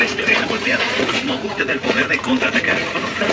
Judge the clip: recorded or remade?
remade